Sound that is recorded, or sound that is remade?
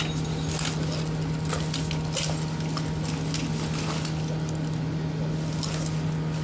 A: recorded